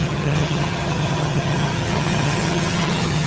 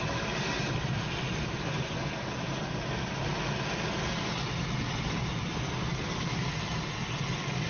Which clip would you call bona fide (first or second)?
second